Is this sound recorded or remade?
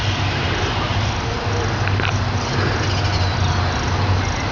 recorded